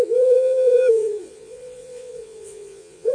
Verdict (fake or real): fake